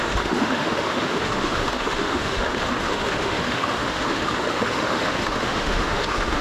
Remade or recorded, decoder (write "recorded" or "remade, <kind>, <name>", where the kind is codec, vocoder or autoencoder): remade, autoencoder, DAC-VAE